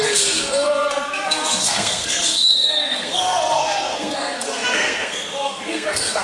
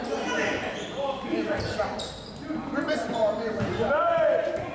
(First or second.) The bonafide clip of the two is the second